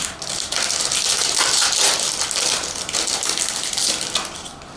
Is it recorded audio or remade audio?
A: recorded